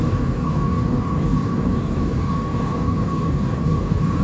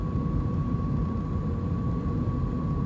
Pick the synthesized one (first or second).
first